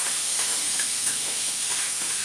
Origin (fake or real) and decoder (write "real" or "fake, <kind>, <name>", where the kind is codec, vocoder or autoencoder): fake, autoencoder, DAC-VAE